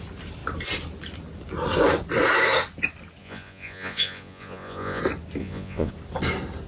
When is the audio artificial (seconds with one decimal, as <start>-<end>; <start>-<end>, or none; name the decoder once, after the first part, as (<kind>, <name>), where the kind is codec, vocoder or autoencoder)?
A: 3.2-5.0 (vocoder, Vocos); 5.4-5.9